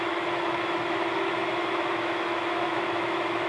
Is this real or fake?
fake